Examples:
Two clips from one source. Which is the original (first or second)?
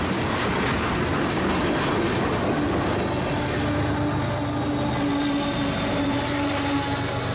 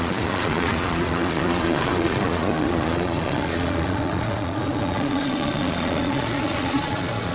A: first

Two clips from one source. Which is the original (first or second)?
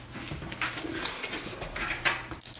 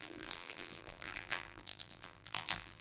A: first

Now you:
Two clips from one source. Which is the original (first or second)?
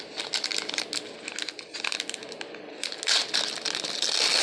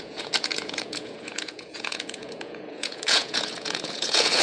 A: first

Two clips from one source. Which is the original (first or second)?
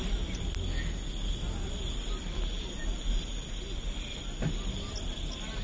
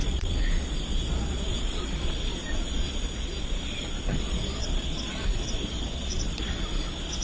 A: first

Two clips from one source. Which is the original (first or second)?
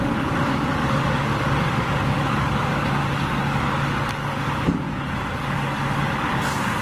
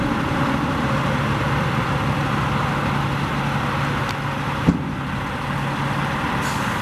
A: second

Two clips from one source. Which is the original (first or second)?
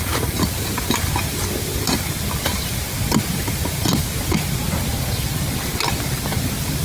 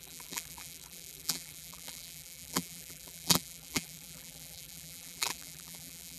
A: first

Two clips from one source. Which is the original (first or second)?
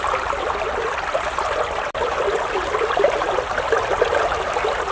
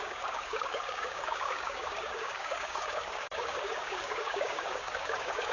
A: first